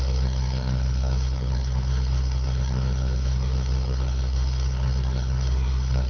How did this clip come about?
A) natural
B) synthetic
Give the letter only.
B